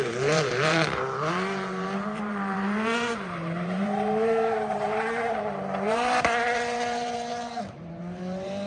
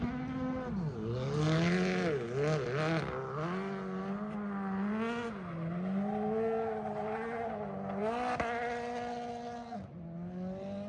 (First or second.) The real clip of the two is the second